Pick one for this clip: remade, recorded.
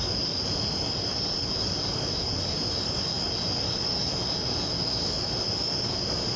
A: recorded